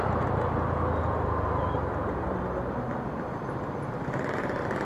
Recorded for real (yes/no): yes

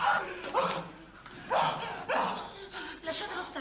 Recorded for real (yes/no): yes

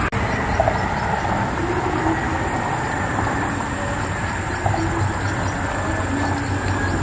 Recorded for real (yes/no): yes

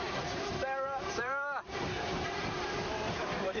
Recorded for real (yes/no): no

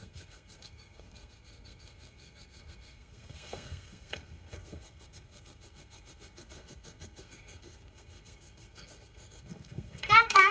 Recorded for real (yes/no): no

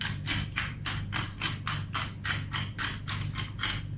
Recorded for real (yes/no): yes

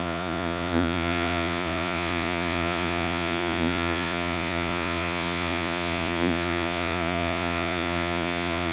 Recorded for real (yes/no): no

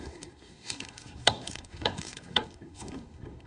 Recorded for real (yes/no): no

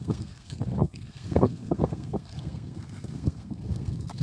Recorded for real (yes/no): no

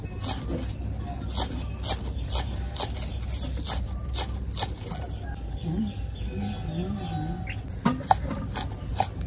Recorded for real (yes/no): yes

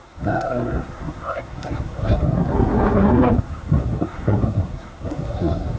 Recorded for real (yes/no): no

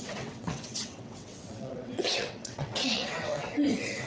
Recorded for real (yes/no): no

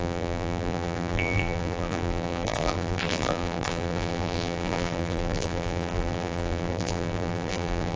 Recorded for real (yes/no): no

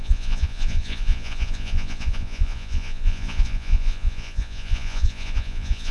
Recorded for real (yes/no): no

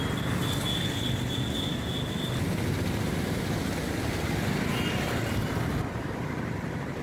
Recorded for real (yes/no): yes